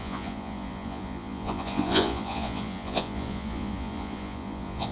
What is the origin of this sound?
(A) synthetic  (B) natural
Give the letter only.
A